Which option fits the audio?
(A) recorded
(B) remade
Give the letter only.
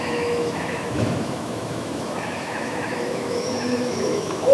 B